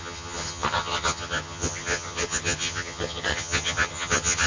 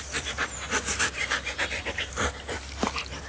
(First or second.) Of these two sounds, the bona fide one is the second